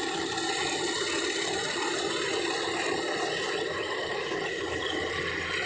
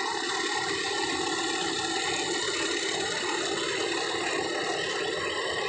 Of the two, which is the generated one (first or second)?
second